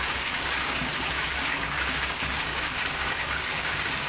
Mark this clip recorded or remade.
remade